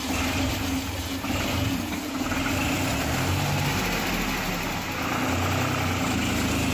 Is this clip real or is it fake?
real